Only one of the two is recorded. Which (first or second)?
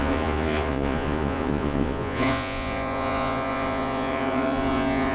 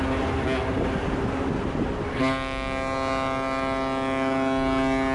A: second